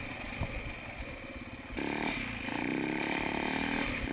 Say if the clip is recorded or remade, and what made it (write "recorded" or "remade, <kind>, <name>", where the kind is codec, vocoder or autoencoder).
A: recorded